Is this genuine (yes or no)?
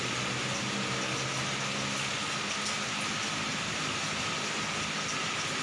yes